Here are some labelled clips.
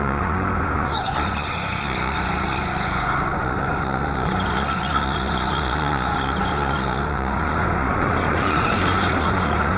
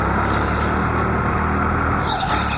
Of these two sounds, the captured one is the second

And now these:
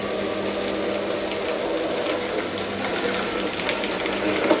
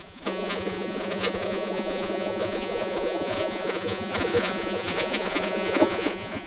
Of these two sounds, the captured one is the first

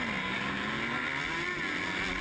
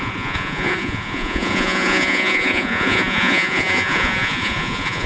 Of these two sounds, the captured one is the first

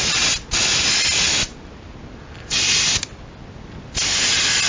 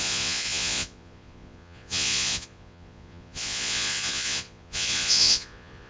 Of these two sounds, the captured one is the first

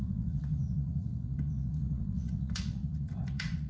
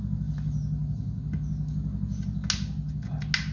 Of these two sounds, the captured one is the second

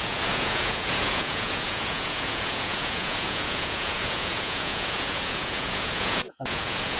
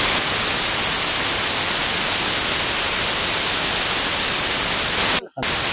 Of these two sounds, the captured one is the second